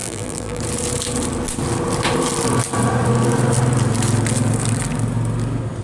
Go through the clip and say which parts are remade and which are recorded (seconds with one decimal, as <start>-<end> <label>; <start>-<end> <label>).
0.0-0.6 remade; 0.6-5.8 recorded